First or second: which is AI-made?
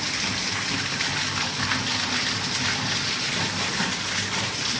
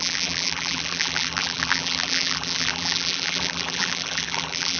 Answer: second